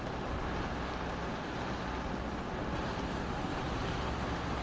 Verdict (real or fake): real